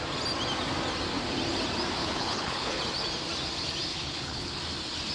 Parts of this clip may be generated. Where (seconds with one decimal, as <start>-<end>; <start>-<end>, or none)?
2.0-2.8; 3.9-4.6